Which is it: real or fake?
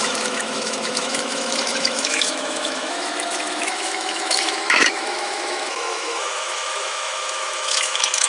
fake